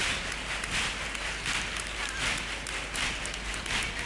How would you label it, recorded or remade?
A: recorded